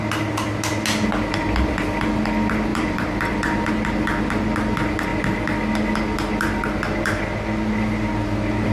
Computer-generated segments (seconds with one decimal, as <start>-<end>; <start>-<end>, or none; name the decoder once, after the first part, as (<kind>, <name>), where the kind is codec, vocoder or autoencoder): 2.7-3.7 (vocoder, BigVGAN v2)